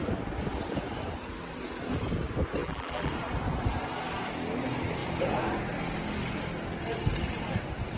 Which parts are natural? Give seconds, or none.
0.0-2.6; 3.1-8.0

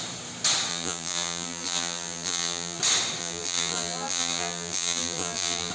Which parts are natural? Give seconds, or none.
0.0-0.7; 2.8-3.2

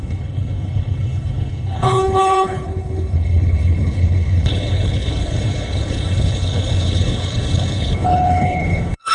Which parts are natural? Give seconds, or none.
none

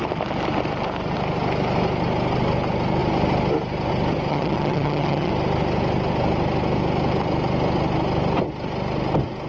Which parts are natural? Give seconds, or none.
0.0-4.3; 5.3-9.5